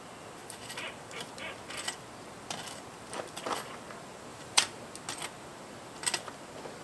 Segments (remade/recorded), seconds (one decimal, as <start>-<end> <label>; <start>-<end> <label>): 0.0-4.3 recorded; 4.3-4.8 remade; 4.8-6.8 recorded